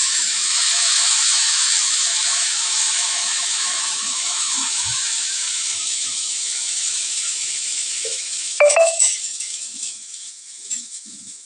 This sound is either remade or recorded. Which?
remade